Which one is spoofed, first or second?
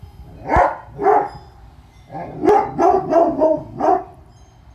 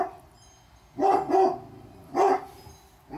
first